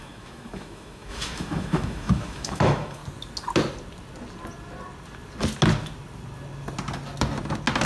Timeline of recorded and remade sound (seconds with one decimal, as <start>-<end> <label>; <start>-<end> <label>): 0.0-3.0 remade; 3.0-7.9 recorded